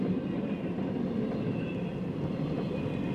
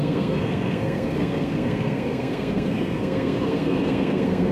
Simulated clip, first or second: second